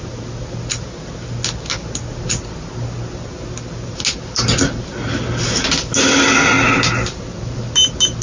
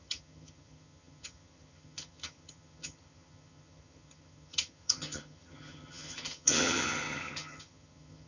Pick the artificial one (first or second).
second